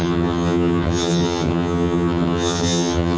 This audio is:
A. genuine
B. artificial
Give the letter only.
B